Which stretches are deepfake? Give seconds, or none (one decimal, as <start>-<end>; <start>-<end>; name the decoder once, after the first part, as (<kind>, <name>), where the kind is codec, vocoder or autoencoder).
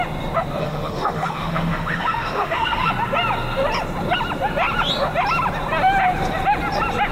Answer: 0.6-2.9 (autoencoder, DAC-VAE)